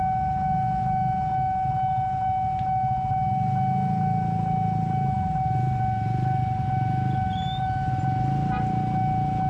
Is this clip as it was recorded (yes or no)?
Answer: yes